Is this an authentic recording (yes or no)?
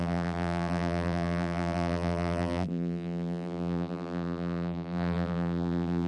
no